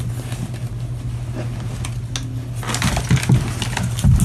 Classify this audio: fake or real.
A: real